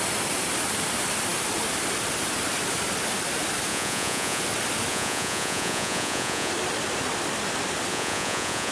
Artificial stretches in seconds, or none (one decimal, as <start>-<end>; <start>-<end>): 3.7-4.4; 4.9-6.5; 7.9-8.7